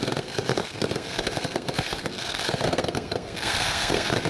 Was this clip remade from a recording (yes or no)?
yes